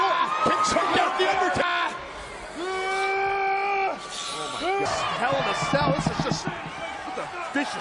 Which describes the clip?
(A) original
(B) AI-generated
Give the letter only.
A